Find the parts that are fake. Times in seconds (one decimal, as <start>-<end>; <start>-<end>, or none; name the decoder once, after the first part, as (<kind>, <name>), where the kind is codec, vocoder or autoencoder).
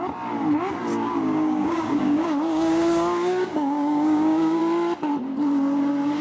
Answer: 0.9-4.6 (codec, DAC)